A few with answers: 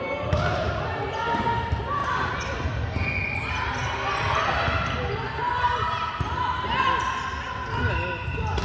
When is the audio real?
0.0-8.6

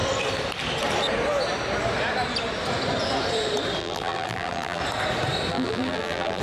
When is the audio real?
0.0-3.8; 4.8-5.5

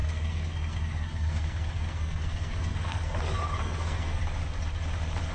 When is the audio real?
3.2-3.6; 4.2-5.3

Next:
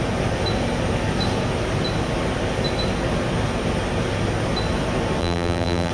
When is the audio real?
0.0-5.2

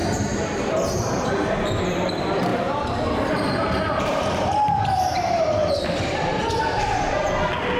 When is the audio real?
1.3-2.5; 5.4-6.3; 7.1-7.8

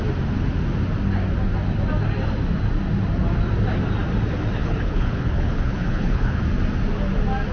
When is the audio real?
0.0-4.6; 6.4-7.5